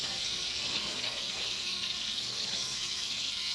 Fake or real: fake